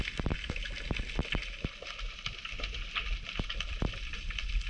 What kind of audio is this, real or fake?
real